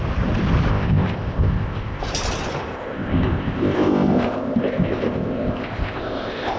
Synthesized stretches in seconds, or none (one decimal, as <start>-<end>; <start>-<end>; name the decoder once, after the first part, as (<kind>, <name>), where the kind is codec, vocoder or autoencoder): 0.7-2.0 (codec, ZipCodec); 2.6-6.6